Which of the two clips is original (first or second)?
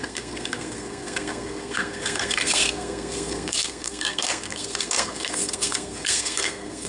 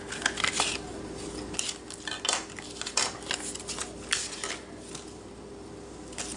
second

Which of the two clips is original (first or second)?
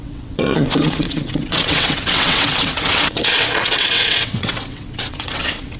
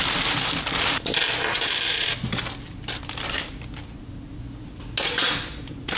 second